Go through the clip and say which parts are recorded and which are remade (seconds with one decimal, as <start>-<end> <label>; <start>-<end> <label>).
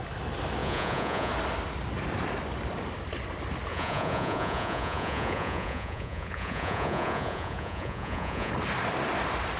0.0-0.6 recorded; 0.6-1.3 remade; 1.3-3.7 recorded; 3.7-8.5 remade; 8.5-9.6 recorded